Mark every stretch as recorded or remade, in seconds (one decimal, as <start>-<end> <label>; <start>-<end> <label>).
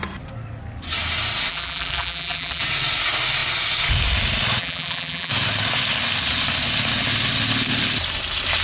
0.0-1.5 recorded; 1.5-2.6 remade; 2.6-4.6 recorded; 4.6-5.3 remade; 5.3-8.6 recorded